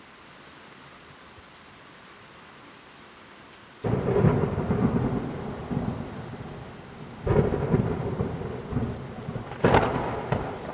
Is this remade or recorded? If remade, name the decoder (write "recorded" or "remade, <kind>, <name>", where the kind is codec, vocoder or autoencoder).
recorded